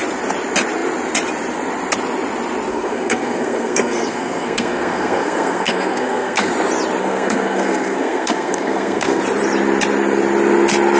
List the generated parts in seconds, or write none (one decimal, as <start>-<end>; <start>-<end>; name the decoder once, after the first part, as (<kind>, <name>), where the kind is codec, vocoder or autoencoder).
2.7-6.5 (codec, SNAC); 7.0-9.2